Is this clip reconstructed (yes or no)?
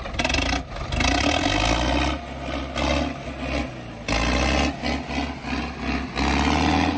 no